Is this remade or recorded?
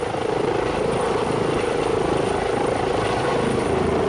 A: recorded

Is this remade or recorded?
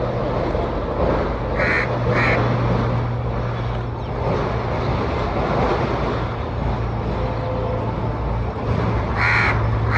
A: recorded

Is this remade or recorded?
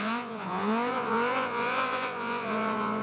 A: remade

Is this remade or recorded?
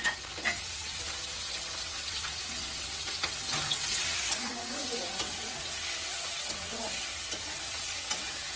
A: remade